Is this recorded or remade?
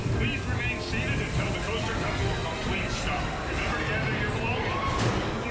recorded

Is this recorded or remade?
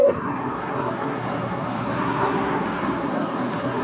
remade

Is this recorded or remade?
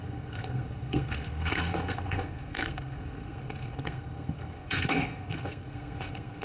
remade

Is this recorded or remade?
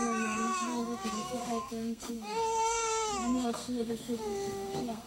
remade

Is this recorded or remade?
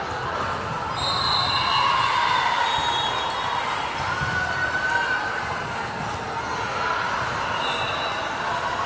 recorded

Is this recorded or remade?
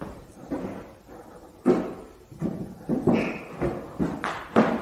recorded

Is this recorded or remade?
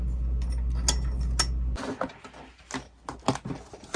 recorded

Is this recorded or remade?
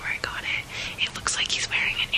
recorded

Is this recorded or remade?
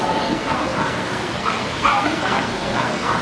remade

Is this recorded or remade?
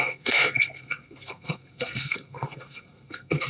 remade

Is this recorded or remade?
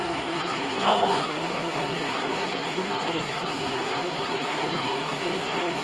remade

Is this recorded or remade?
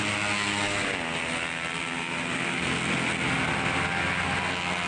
recorded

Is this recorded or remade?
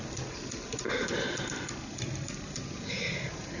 recorded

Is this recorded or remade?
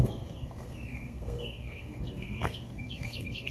remade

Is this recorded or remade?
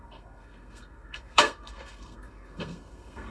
remade